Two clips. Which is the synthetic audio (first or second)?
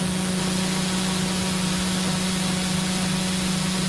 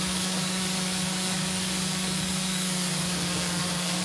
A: second